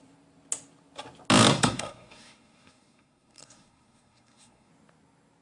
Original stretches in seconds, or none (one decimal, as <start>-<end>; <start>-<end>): 0.0-1.5; 4.7-5.4

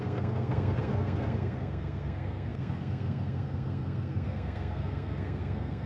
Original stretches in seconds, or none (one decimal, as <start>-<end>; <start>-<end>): none

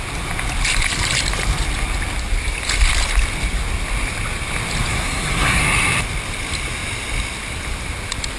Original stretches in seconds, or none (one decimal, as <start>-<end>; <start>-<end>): 0.0-4.9; 5.6-8.4

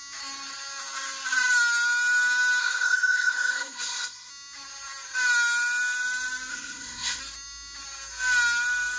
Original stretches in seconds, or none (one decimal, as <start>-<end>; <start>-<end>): 0.0-2.6; 4.3-6.5; 7.2-9.0

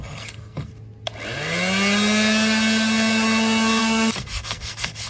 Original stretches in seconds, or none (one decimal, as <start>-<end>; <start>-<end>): 0.7-3.8

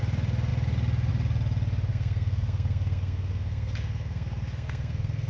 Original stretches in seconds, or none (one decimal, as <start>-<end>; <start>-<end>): 0.0-1.9

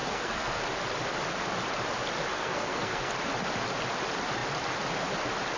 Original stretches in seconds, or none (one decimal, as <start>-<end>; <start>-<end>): 0.6-2.3; 3.1-5.6

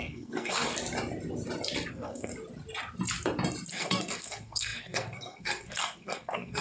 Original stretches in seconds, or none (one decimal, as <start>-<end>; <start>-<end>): 0.7-1.9; 2.3-3.7